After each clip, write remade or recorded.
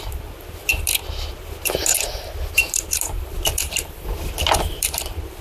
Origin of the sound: recorded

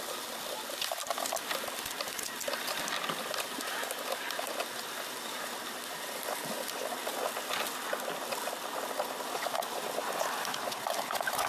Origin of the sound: recorded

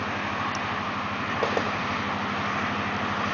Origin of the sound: recorded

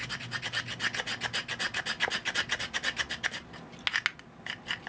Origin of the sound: recorded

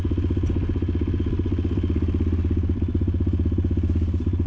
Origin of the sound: recorded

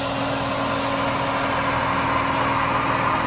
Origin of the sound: recorded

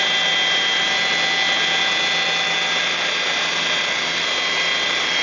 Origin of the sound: recorded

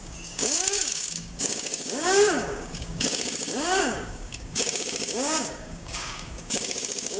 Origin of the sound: remade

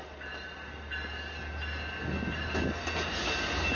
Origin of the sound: recorded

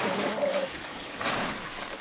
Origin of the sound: remade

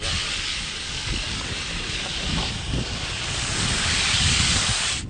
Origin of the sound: remade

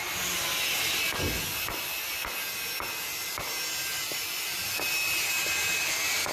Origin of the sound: recorded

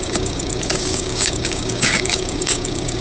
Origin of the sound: remade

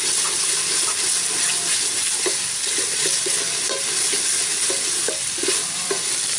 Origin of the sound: recorded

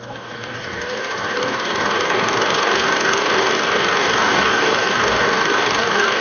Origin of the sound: remade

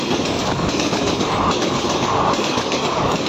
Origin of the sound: remade